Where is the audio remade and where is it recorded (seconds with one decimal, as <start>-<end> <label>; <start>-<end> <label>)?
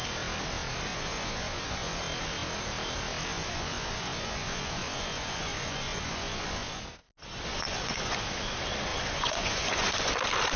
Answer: 0.0-0.9 recorded; 0.9-2.0 remade; 2.0-3.3 recorded; 3.3-6.8 remade; 6.8-7.5 recorded; 7.5-8.2 remade; 8.2-8.9 recorded; 8.9-10.1 remade; 10.1-10.6 recorded